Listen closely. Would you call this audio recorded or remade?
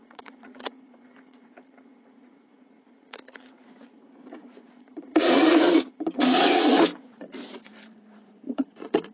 remade